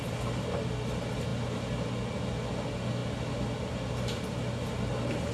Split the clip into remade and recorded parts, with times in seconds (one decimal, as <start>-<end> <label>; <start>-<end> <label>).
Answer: 0.0-5.3 recorded